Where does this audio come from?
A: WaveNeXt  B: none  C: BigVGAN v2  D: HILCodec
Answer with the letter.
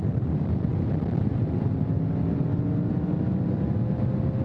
B